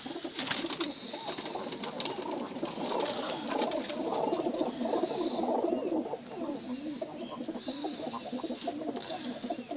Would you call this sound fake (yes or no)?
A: no